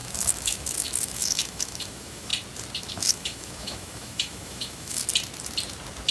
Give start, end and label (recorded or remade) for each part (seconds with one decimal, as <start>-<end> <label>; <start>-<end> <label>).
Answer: 0.0-2.3 remade; 2.3-2.9 recorded; 2.9-5.0 remade; 5.0-6.1 recorded